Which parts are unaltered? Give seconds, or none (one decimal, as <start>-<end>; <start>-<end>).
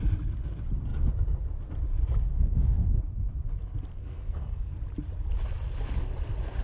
0.0-2.3; 3.0-3.9; 4.7-6.6